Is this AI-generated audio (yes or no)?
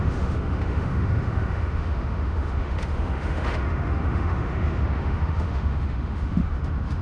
yes